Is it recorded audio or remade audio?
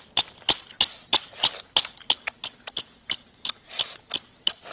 recorded